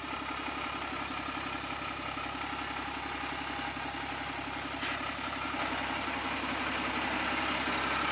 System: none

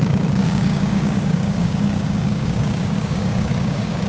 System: codec, DAC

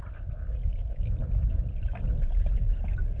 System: none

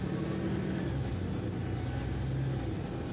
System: none